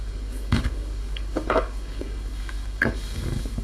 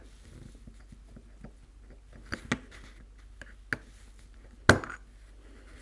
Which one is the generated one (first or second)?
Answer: first